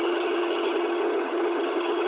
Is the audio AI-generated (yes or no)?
yes